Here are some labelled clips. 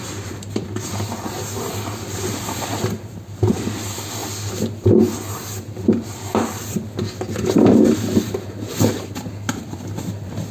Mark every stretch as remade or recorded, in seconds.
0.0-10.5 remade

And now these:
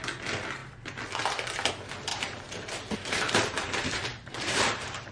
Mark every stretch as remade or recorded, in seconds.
0.0-2.1 recorded; 2.1-2.7 remade; 2.7-4.1 recorded; 4.1-5.1 remade

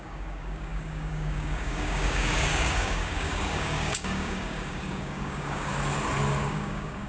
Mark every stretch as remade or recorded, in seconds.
0.0-5.7 remade; 5.7-6.4 recorded; 6.4-7.1 remade

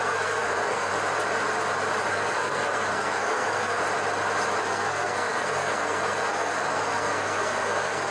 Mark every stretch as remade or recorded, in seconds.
0.0-0.9 remade; 0.9-2.1 recorded; 2.1-3.8 remade; 3.8-4.6 recorded; 4.6-8.1 remade

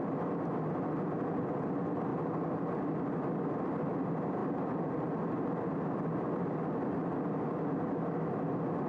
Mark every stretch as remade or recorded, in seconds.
0.0-2.1 recorded; 2.1-2.6 remade; 2.6-4.4 recorded; 4.4-4.9 remade; 4.9-8.9 recorded

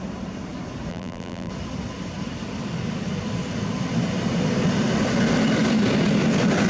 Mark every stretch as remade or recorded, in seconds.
0.0-0.9 recorded; 0.9-1.5 remade; 1.5-6.7 recorded

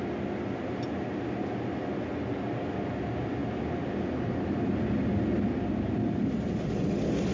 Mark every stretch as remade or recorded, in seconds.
0.0-7.3 recorded